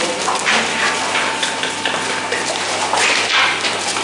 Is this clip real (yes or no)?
yes